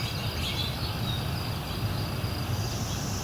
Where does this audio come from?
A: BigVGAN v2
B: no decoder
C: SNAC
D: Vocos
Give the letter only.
B